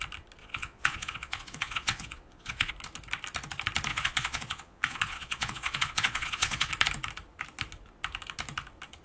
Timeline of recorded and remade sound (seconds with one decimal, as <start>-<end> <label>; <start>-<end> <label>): 0.0-0.4 recorded; 0.4-2.7 remade; 2.7-3.9 recorded; 3.9-6.7 remade; 6.7-9.0 recorded